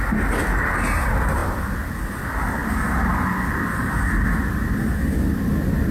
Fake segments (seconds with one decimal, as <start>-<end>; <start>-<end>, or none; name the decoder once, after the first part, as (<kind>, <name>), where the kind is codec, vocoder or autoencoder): none

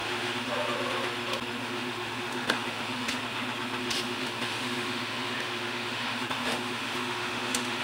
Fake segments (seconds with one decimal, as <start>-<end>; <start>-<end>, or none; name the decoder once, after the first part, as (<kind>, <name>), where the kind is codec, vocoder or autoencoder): 0.0-0.5 (autoencoder, DAC-VAE); 1.6-3.2; 3.8-7.8

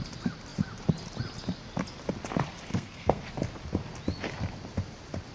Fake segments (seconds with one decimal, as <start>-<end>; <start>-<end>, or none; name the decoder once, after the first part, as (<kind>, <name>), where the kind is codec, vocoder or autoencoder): 2.7-3.2 (codec, SNAC)

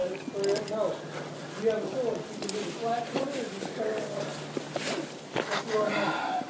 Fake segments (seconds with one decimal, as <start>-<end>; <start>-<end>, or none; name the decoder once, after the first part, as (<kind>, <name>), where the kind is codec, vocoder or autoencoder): none

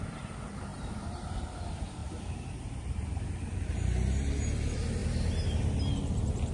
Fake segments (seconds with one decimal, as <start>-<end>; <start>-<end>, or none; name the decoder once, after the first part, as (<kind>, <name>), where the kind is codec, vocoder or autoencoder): 0.7-1.5 (vocoder, BigVGAN v2); 2.0-3.7

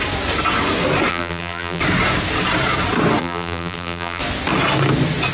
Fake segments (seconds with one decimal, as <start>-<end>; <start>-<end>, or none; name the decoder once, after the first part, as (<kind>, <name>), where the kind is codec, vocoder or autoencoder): 1.1-1.8 (vocoder, BigVGAN v2); 3.2-4.2